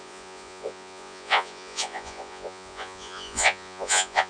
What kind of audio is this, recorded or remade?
remade